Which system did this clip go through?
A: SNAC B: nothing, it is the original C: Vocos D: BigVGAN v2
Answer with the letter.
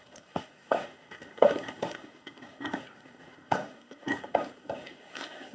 A